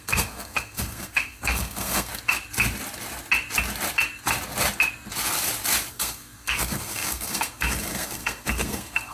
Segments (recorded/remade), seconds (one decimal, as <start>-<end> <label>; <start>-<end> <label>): 0.0-2.1 remade; 2.1-5.9 recorded; 5.9-9.1 remade